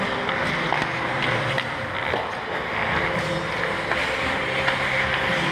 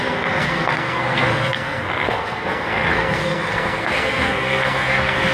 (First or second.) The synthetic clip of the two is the second